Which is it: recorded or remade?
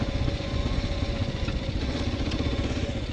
remade